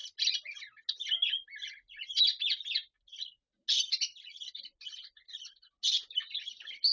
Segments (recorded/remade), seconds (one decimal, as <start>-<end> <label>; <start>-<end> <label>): 0.0-6.9 recorded